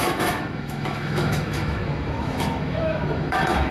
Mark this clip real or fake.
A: fake